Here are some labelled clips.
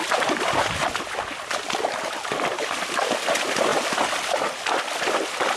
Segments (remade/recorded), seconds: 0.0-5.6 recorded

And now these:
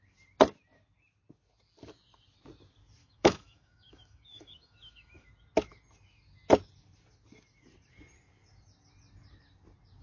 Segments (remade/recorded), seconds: 0.0-3.0 recorded; 3.0-5.3 remade; 5.3-10.0 recorded